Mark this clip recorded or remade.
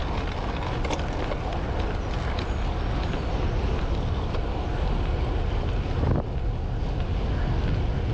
recorded